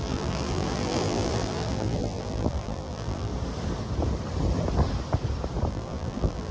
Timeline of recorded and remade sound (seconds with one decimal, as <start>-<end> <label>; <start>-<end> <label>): 0.0-3.3 remade; 3.3-5.7 recorded; 5.7-6.5 remade